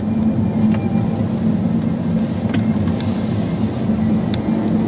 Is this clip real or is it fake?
real